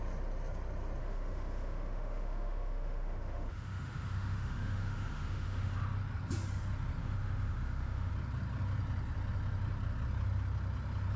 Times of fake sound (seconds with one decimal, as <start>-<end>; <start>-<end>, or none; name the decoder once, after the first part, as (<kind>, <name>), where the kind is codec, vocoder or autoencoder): 1.0-5.7 (autoencoder, DAC-VAE); 7.0-8.1